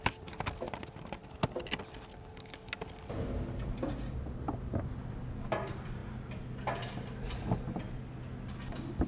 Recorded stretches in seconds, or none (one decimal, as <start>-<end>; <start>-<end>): 0.0-9.1